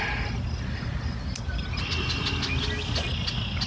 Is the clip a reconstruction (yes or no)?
no